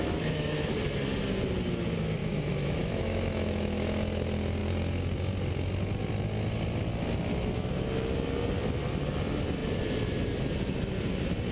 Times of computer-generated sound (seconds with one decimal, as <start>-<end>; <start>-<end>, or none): 0.0-0.7; 2.2-4.0